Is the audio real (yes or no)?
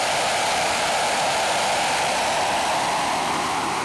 yes